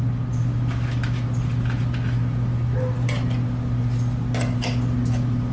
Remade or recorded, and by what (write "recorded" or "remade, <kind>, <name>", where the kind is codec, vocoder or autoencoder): recorded